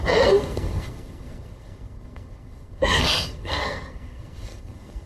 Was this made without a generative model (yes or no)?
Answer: no